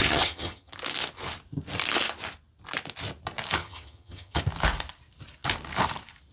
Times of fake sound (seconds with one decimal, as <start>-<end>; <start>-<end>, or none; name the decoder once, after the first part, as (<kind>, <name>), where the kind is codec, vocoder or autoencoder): 0.0-0.7 (vocoder, HiFi-GAN); 3.6-4.4